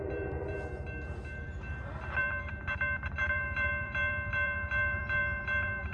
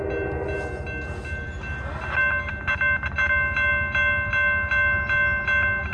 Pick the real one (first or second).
second